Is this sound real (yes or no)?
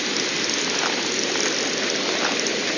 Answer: yes